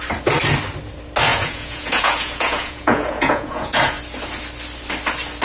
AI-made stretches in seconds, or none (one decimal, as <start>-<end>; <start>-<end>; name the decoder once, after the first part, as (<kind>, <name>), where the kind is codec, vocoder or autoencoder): 1.3-4.0 (vocoder, Vocos)